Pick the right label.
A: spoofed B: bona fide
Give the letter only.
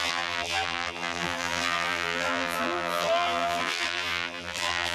A